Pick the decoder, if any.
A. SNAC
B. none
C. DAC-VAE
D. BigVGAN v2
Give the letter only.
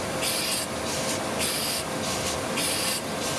B